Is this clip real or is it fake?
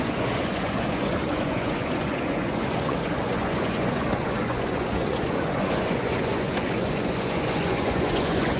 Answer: fake